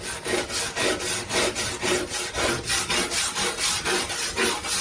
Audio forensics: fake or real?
real